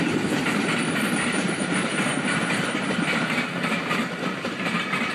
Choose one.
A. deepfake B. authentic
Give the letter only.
A